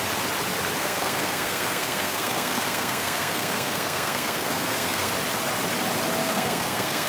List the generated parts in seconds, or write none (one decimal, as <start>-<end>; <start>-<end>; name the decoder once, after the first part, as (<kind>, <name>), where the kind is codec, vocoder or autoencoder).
0.8-5.1 (codec, SNAC); 6.2-7.1